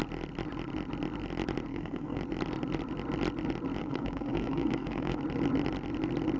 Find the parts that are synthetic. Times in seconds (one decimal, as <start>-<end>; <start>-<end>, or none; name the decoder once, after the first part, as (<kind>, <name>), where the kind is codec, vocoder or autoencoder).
1.7-2.2 (codec, SNAC); 3.8-5.2